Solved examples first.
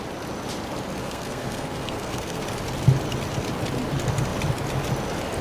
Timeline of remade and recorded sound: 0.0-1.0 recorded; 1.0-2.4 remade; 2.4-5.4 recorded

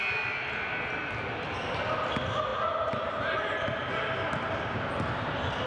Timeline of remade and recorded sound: 0.0-5.7 recorded

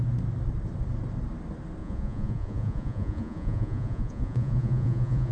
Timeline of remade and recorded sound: 0.0-1.8 recorded; 1.8-5.3 remade

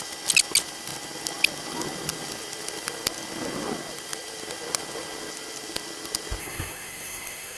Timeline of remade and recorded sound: 0.0-6.4 recorded; 6.4-7.6 remade

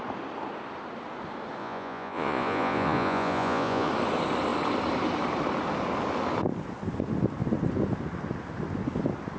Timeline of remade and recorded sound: 0.0-1.6 recorded; 1.6-3.9 remade; 3.9-9.4 recorded

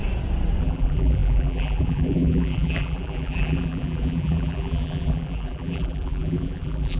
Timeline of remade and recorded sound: 0.0-0.6 recorded; 0.6-7.0 remade